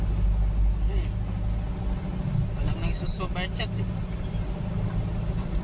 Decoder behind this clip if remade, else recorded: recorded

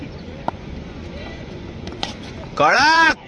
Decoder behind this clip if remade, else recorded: remade, vocoder, Vocos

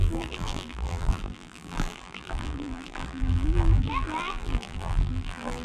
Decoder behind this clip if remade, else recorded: remade, vocoder, BigVGAN v2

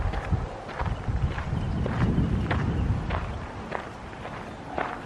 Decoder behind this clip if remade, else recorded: recorded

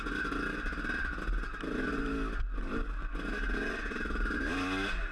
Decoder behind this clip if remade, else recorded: recorded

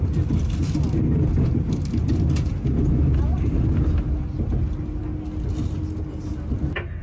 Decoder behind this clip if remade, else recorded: recorded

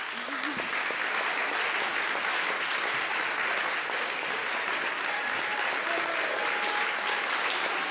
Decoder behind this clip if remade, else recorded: recorded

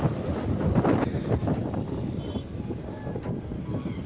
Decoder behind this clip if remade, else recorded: recorded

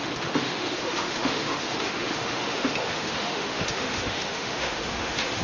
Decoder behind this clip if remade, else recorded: remade, autoencoder, DAC-VAE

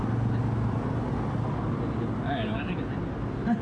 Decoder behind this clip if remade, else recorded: recorded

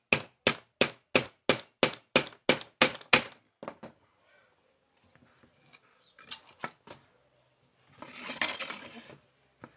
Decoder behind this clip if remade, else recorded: recorded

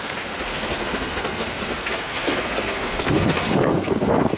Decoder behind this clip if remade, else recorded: remade, codec, SNAC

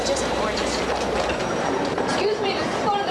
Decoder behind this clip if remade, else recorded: remade, vocoder, BigVGAN v2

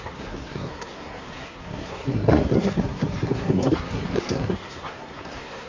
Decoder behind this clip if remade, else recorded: remade, codec, SNAC